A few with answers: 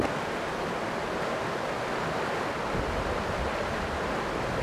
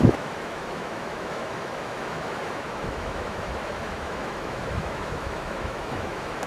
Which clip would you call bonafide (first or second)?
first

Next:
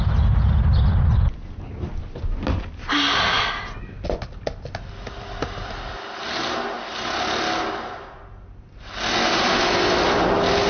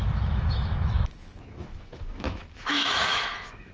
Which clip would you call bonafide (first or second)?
first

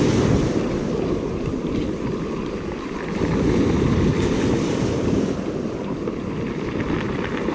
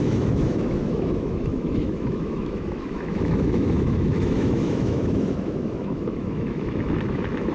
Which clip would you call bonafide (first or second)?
first